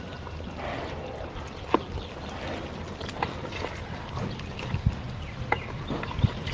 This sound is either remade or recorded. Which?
recorded